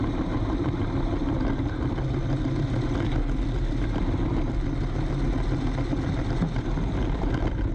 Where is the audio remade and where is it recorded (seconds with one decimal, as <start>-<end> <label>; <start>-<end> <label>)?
0.0-7.7 recorded